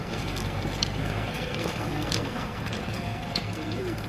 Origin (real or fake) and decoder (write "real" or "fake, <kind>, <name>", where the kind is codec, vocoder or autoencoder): fake, codec, SNAC